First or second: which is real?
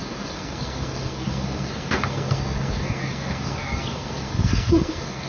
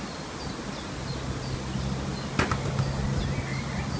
second